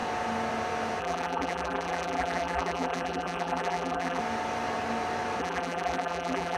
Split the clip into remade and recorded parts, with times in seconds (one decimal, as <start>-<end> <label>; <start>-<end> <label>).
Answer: 0.0-1.0 recorded; 1.0-4.2 remade; 4.2-5.4 recorded; 5.4-6.6 remade